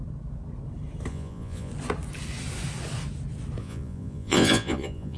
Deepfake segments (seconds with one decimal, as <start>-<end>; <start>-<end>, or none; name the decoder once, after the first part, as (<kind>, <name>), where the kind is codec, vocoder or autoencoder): 1.1-1.7 (vocoder, Vocos); 3.6-5.2